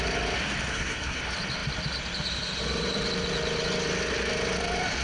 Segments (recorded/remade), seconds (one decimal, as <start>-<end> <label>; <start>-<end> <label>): 0.0-0.7 recorded; 0.7-1.2 remade; 1.2-5.0 recorded